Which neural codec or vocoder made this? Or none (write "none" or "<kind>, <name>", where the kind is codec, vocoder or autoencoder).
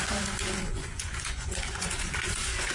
vocoder, Vocos